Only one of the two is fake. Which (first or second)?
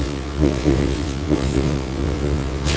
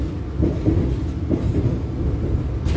first